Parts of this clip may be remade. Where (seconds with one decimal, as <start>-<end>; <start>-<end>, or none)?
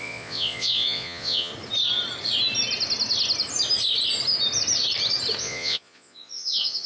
0.0-1.5; 5.4-6.9